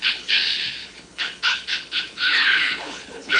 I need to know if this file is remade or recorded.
remade